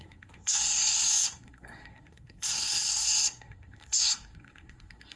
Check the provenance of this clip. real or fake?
fake